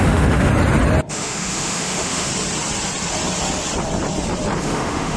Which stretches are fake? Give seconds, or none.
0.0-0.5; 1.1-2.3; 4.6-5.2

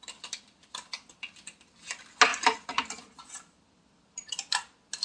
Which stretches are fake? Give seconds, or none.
none

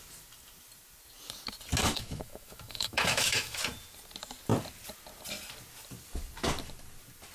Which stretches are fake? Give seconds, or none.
1.8-3.6